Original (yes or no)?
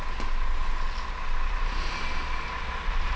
yes